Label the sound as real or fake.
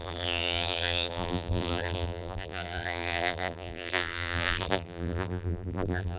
fake